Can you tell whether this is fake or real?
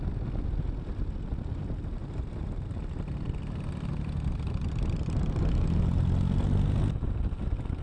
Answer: real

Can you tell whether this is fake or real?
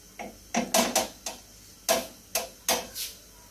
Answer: real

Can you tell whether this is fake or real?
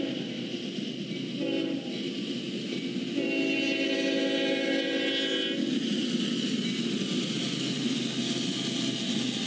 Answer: real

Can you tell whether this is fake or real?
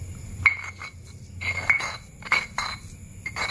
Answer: real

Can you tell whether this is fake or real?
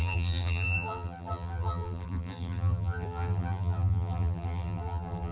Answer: fake